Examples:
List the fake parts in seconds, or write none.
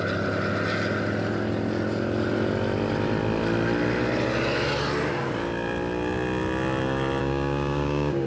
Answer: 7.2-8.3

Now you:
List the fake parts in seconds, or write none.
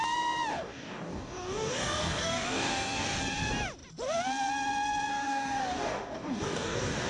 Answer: 0.5-3.2; 5.1-7.1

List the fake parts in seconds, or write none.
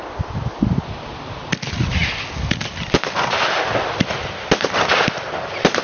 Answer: none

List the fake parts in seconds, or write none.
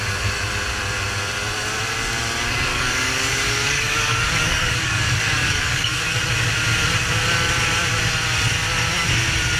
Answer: 2.7-6.2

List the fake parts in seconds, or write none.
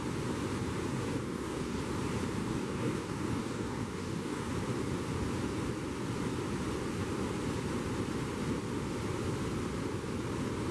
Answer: 0.9-1.8; 2.4-4.5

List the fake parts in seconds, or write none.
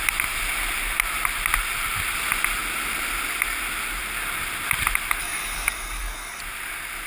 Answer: 5.2-6.4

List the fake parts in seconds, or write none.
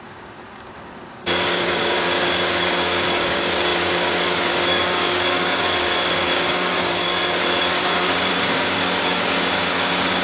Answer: 0.0-10.2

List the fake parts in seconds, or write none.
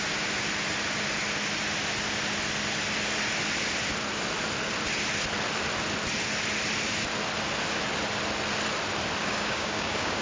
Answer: 9.2-10.2